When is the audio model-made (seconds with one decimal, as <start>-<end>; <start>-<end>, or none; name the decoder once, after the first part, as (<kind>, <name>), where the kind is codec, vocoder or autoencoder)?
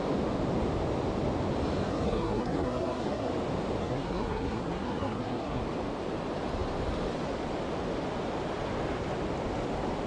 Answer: 1.9-3.3 (codec, SNAC); 3.8-5.6